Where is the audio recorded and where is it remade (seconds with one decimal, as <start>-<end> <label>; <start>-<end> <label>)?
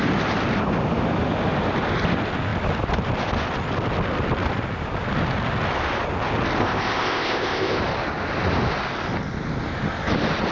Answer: 0.0-6.6 recorded; 6.6-7.8 remade; 7.8-10.5 recorded